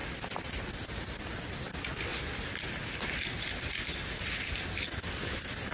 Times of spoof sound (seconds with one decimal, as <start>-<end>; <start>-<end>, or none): 0.0-2.1